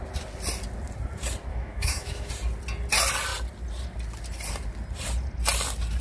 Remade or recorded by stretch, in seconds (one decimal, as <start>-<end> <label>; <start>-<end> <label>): 0.0-1.5 recorded; 1.5-2.3 remade; 2.3-6.0 recorded